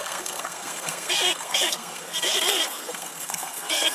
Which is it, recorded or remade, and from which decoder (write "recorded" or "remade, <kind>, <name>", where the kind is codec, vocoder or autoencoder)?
remade, codec, SNAC